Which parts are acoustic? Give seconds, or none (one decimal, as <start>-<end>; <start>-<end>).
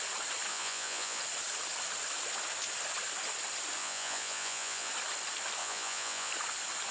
0.0-0.5; 1.2-3.8; 4.9-5.6; 6.3-6.9